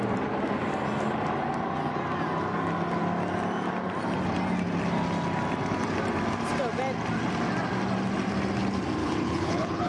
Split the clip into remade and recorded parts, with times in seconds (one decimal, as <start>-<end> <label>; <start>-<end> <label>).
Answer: 0.0-9.0 recorded; 9.0-9.9 remade